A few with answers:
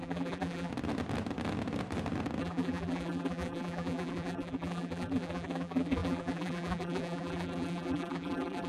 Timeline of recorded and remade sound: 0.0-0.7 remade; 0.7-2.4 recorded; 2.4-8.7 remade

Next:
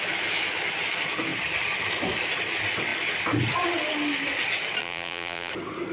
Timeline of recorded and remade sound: 0.0-4.8 recorded; 4.8-5.5 remade; 5.5-5.9 recorded

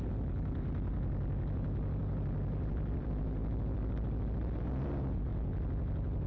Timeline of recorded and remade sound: 0.0-3.4 remade; 3.4-4.6 recorded; 4.6-5.3 remade; 5.3-6.3 recorded

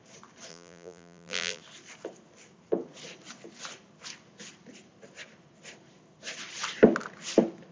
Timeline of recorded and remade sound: 0.0-0.5 recorded; 0.5-1.6 remade; 1.6-7.7 recorded

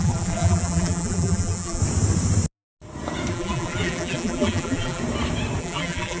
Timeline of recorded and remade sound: 0.0-1.8 remade; 1.8-3.3 recorded; 3.3-5.0 remade; 5.0-5.6 recorded; 5.6-6.2 remade

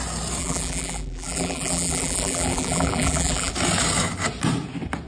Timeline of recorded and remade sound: 0.0-0.4 recorded; 0.4-3.5 remade; 3.5-5.1 recorded

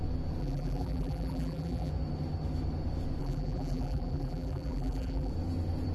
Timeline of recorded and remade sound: 0.0-0.4 recorded; 0.4-1.9 remade; 1.9-3.2 recorded; 3.2-5.3 remade; 5.3-5.9 recorded

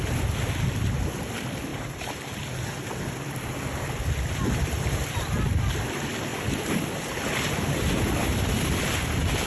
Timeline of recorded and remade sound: 0.0-1.7 recorded; 1.7-2.4 remade; 2.4-8.2 recorded; 8.2-9.5 remade